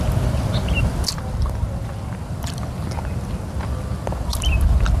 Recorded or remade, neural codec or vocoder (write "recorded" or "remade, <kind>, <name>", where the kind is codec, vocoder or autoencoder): recorded